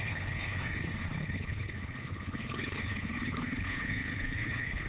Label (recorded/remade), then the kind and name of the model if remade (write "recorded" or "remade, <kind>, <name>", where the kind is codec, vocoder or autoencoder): remade, codec, HILCodec